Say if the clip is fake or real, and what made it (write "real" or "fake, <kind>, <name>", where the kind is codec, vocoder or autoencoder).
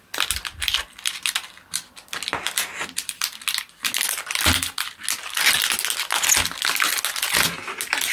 real